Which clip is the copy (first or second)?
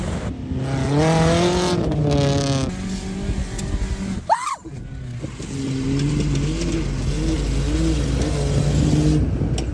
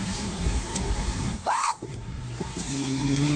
second